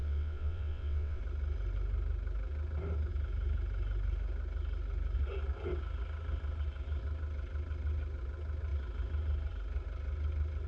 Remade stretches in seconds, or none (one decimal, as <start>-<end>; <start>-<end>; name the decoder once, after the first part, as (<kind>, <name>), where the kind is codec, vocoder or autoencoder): 0.0-1.2 (vocoder, WaveNeXt)